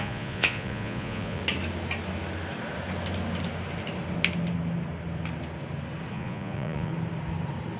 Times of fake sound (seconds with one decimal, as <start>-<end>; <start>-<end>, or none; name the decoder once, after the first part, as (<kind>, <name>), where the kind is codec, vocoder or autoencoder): 0.0-1.4 (vocoder, Vocos); 6.1-6.9